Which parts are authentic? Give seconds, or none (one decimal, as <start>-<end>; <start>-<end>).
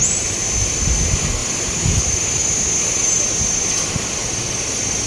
0.0-5.1